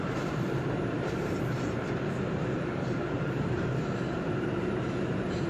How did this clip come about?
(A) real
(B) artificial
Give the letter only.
B